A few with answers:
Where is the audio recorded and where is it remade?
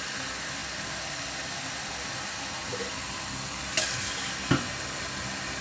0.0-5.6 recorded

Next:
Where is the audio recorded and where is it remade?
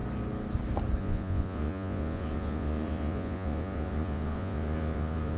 0.0-1.0 recorded; 1.0-5.4 remade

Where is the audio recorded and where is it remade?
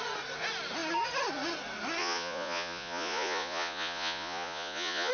0.0-2.0 recorded; 2.0-5.1 remade